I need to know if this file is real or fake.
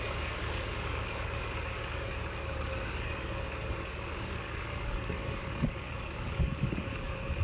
fake